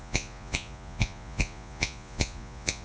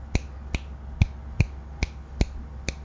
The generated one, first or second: first